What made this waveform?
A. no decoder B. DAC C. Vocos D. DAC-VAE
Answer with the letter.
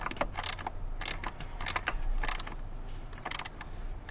A